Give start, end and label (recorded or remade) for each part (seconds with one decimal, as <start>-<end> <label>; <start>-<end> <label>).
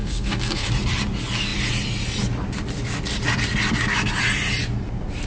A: 0.0-0.7 remade; 0.7-5.3 recorded